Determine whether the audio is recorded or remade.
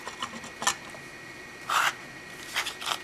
recorded